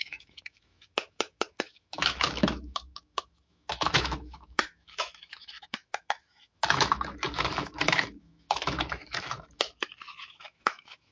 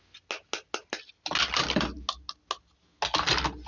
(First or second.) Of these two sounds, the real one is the second